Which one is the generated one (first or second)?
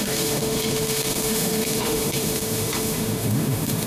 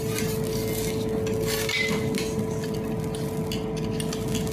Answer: first